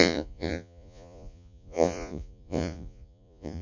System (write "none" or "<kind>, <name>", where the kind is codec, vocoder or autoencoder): vocoder, Vocos